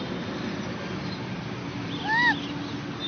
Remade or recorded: recorded